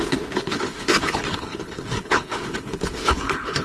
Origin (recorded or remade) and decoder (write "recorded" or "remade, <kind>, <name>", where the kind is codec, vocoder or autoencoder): remade, codec, HILCodec